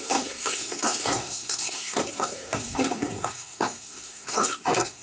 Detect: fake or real fake